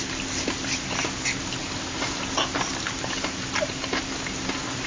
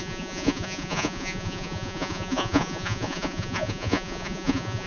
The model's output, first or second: second